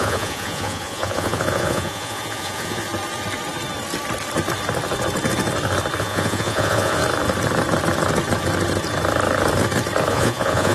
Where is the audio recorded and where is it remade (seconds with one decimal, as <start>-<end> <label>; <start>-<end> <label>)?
0.0-2.9 remade; 2.9-6.0 recorded; 6.0-7.0 remade; 7.0-10.1 recorded; 10.1-10.7 remade